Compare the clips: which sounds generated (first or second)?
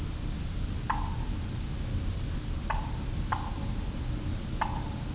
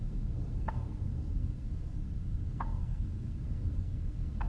second